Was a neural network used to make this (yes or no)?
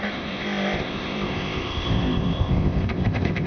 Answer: yes